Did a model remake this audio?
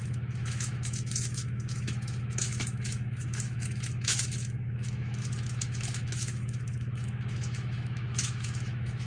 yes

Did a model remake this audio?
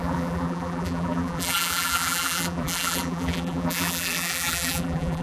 yes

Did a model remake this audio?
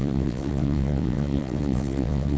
yes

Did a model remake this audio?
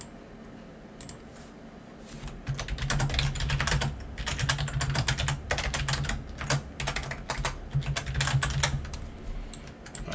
no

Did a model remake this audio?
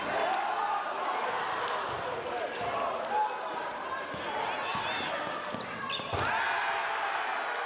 no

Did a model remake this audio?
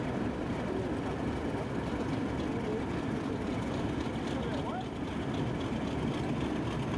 no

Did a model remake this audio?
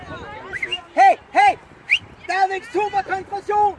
yes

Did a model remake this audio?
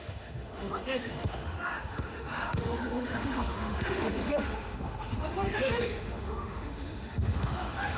yes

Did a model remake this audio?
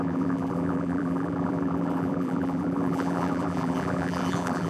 yes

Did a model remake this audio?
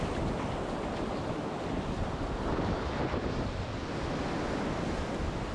no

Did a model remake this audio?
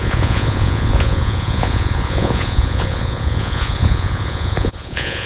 yes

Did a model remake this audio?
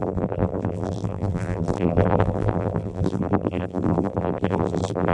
yes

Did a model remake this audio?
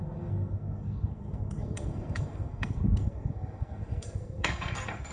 yes